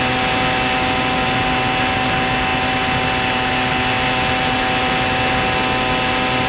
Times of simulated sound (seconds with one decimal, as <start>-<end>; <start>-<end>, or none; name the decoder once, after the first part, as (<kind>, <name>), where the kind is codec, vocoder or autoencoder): none